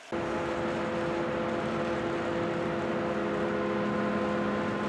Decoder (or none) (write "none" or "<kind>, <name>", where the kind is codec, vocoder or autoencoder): none